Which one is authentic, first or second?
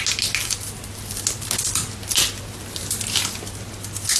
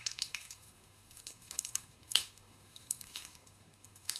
first